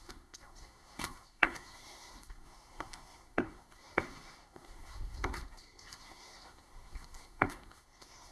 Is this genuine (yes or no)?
no